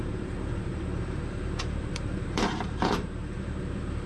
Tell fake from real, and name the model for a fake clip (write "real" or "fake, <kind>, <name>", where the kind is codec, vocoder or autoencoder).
fake, vocoder, BigVGAN v2